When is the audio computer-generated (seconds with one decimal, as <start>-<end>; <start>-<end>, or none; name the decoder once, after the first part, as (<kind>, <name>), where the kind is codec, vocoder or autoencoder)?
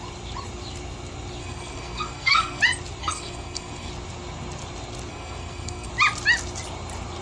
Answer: 1.4-2.6 (codec, SNAC); 3.0-3.9; 5.1-5.9